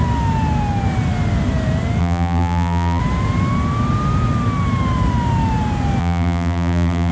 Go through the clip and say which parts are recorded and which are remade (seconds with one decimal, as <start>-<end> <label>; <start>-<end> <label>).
0.0-2.0 recorded; 2.0-3.0 remade; 3.0-6.0 recorded; 6.0-7.1 remade